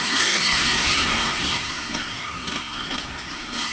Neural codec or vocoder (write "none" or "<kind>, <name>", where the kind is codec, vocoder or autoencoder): codec, SNAC